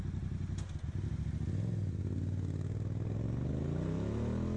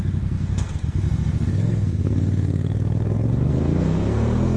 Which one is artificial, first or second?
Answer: second